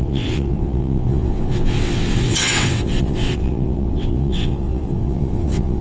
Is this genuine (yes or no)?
no